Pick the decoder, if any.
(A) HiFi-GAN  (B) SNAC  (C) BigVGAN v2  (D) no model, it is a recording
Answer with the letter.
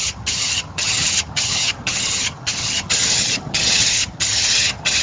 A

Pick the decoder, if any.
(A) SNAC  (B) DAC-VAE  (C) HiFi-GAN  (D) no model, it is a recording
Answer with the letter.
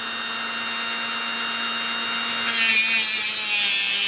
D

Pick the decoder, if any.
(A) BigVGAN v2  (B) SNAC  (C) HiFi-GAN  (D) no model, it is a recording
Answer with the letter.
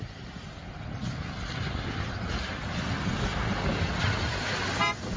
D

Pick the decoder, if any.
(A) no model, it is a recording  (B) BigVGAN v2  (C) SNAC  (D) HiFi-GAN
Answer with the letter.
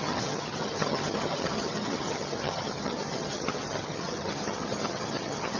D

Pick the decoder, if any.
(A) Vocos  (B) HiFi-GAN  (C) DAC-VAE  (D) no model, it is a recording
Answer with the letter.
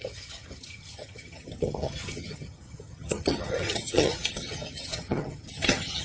B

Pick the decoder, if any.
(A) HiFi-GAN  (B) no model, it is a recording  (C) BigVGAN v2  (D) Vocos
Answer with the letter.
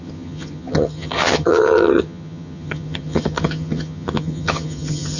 A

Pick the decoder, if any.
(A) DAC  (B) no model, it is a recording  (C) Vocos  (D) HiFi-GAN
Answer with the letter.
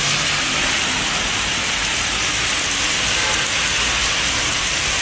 B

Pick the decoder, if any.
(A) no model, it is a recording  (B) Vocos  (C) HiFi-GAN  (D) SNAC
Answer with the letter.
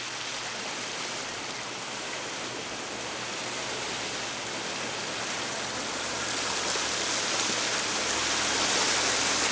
A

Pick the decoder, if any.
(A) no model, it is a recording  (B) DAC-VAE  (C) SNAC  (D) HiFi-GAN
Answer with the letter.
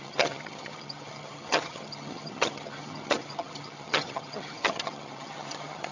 D